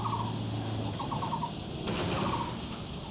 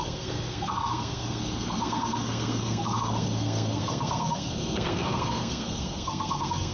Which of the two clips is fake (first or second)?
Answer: second